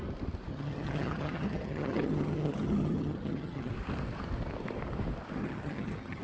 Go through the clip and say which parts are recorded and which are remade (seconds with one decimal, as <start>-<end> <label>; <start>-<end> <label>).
0.0-0.5 recorded; 0.5-3.7 remade; 3.7-5.4 recorded; 5.4-6.2 remade